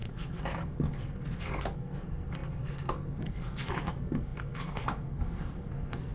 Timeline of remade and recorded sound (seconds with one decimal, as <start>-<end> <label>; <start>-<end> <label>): 0.0-6.1 remade

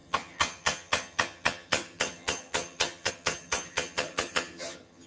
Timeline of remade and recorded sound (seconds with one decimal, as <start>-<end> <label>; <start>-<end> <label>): 0.0-5.1 remade